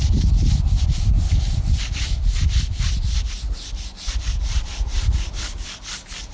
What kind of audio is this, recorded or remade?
recorded